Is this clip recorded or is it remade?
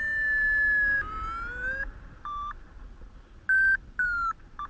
recorded